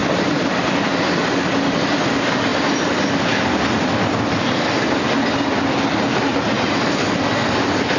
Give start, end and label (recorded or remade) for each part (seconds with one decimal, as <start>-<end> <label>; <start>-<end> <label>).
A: 0.0-8.0 recorded

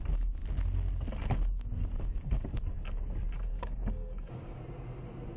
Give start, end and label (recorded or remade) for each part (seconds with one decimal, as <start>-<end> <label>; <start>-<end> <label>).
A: 0.0-3.5 recorded; 3.5-4.6 remade; 4.6-5.4 recorded

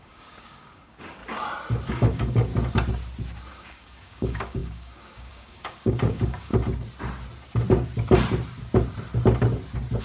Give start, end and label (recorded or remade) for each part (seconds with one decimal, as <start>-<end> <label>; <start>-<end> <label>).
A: 0.0-1.2 remade; 1.2-1.9 recorded; 1.9-2.5 remade; 2.5-3.5 recorded; 3.5-6.5 remade; 6.5-10.0 recorded

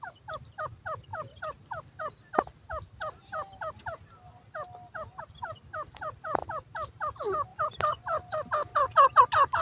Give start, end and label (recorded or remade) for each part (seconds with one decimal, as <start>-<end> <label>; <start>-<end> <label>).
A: 0.0-9.6 recorded

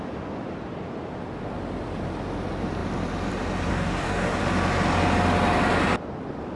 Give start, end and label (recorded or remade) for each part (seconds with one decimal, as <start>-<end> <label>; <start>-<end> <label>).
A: 0.0-3.7 recorded; 3.7-4.4 remade; 4.4-6.6 recorded

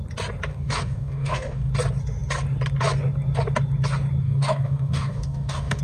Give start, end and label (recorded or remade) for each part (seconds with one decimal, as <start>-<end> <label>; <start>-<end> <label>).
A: 0.0-0.5 recorded; 0.5-1.7 remade; 1.7-4.2 recorded; 4.2-5.8 remade

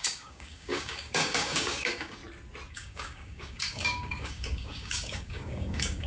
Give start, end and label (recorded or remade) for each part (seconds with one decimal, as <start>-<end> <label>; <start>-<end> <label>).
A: 0.0-2.2 remade; 2.2-2.7 recorded; 2.7-6.1 remade